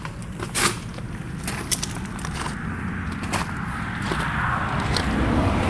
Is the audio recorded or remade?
recorded